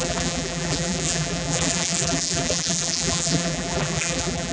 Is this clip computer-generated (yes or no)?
yes